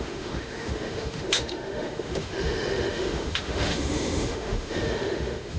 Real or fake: fake